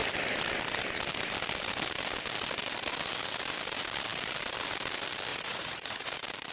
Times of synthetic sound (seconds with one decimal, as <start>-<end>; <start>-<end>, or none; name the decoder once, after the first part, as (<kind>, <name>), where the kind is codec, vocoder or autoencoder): 5.3-6.1 (vocoder, Vocos)